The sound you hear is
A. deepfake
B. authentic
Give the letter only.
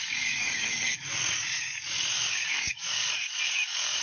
A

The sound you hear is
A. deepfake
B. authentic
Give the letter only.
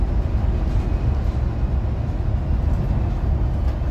B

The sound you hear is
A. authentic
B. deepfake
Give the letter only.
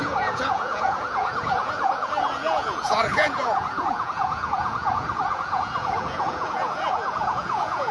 B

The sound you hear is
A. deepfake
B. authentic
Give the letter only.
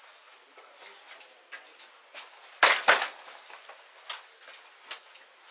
B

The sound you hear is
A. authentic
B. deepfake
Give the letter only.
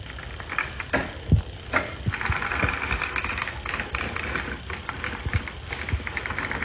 A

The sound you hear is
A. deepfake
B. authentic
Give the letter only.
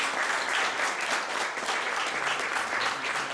B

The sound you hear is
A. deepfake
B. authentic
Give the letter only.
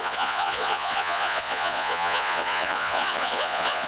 A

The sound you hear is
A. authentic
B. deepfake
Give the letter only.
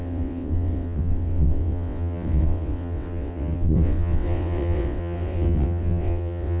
B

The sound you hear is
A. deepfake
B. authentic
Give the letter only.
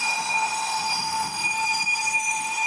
A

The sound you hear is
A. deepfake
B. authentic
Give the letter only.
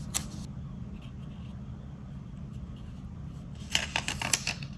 B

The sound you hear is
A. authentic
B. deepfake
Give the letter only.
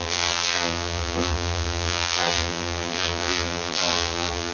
B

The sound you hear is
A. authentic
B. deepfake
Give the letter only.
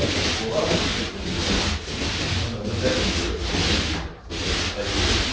A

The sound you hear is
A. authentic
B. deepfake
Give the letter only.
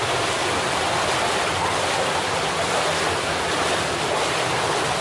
A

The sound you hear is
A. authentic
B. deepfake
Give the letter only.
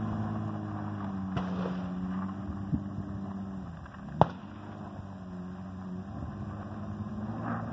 A